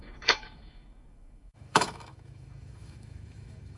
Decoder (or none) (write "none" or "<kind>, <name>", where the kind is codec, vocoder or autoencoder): autoencoder, DAC-VAE